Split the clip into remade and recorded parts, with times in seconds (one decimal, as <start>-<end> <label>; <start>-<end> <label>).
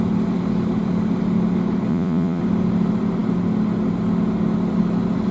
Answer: 0.0-1.9 recorded; 1.9-2.4 remade; 2.4-5.3 recorded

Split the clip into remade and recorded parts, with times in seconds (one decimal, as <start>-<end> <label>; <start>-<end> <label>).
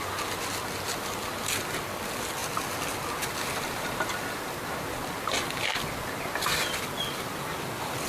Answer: 0.0-8.1 recorded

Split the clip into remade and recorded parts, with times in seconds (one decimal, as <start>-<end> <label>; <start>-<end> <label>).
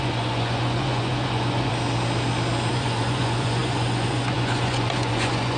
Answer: 0.0-1.7 remade; 1.7-2.7 recorded; 2.7-5.6 remade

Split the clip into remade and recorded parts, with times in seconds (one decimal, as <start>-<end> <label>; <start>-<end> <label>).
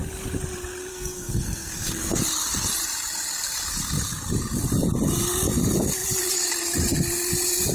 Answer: 0.0-0.9 recorded; 0.9-2.2 remade; 2.2-7.7 recorded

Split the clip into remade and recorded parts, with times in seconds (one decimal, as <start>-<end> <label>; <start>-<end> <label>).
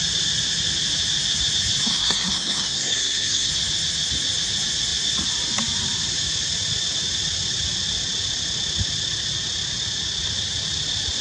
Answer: 0.0-1.9 recorded; 1.9-3.5 remade; 3.5-11.2 recorded